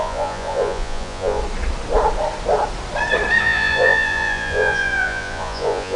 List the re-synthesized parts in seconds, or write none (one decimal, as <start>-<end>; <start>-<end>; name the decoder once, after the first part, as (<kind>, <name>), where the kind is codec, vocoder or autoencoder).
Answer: 0.0-1.4 (vocoder, Vocos); 3.4-6.0